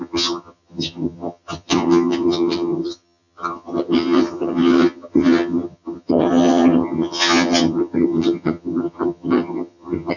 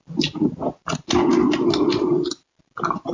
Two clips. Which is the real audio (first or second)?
second